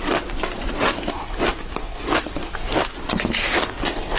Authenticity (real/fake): real